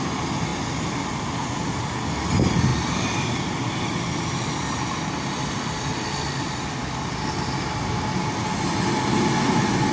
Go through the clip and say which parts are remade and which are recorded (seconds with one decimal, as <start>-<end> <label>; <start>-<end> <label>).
0.0-9.9 recorded